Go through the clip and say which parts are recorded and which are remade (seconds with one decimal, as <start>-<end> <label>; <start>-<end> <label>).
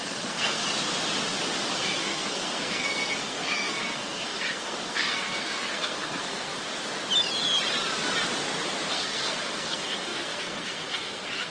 0.0-0.6 remade; 0.6-1.7 recorded; 1.7-6.5 remade; 6.5-8.9 recorded; 8.9-11.5 remade